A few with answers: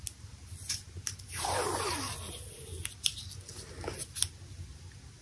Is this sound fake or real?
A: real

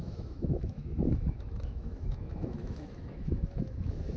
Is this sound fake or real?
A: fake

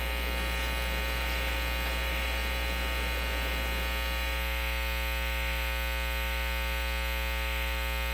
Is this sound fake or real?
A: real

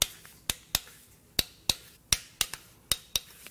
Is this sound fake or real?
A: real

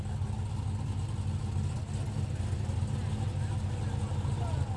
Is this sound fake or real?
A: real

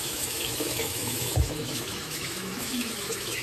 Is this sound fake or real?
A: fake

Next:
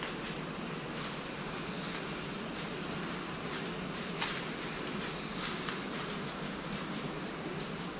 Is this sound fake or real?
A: real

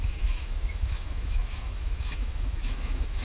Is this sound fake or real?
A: fake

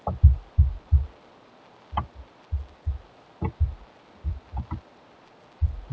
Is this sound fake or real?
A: real